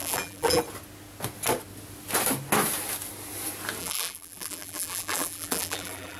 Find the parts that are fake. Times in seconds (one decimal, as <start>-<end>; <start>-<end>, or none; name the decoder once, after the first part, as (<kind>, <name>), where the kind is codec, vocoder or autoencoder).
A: 0.0-0.6 (vocoder, BigVGAN v2); 3.8-6.2